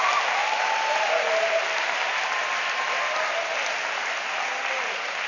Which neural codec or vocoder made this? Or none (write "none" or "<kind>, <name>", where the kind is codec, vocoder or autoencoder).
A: none